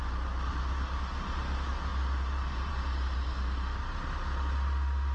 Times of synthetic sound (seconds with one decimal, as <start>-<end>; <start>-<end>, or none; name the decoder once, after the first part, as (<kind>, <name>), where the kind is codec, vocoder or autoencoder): none